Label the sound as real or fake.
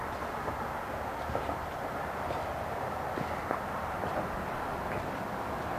real